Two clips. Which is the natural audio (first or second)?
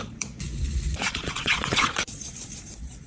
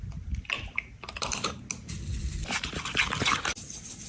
second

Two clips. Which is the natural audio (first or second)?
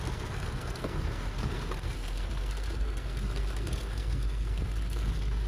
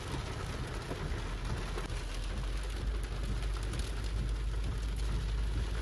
second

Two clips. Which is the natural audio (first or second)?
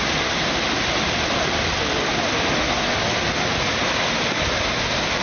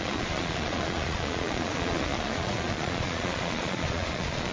first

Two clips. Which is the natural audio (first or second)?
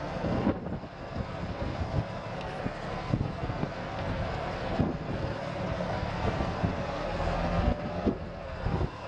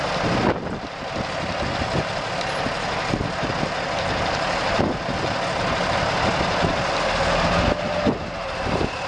second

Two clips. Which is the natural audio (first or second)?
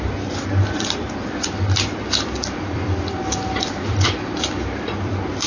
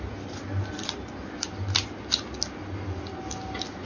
second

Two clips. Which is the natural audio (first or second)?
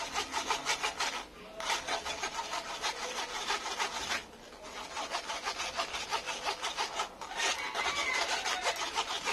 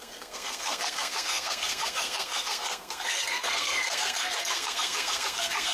first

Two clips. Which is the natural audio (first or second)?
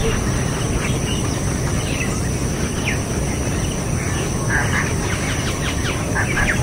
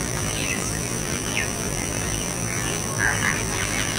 first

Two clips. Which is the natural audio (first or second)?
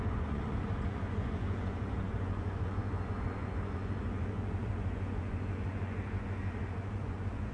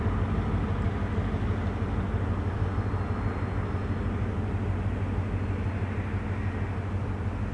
second